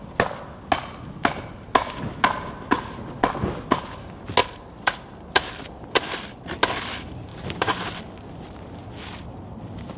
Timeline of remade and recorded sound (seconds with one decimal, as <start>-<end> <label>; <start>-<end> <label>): 0.0-4.4 recorded; 4.4-6.6 remade; 6.6-7.3 recorded; 7.3-8.0 remade; 8.0-10.0 recorded